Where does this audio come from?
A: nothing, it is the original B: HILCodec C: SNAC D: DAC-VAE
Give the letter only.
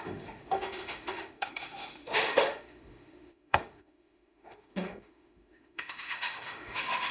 D